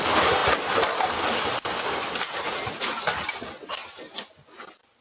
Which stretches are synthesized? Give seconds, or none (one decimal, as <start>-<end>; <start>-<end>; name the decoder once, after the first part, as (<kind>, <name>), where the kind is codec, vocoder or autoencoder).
none